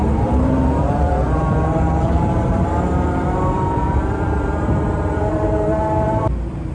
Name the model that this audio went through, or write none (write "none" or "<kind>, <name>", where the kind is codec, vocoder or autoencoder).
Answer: vocoder, BigVGAN v2